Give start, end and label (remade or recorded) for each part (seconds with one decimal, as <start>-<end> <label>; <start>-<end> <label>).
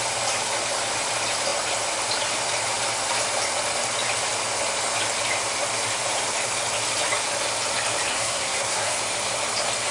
0.0-8.1 recorded; 8.1-9.0 remade; 9.0-9.9 recorded